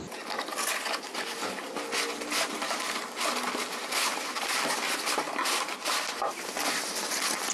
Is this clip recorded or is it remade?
remade